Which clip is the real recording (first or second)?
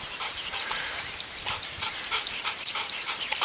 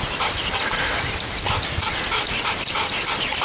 second